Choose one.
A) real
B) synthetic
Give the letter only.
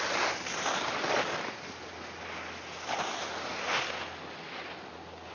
A